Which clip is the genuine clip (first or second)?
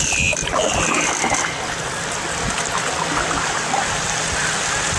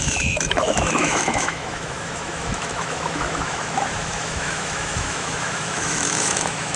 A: first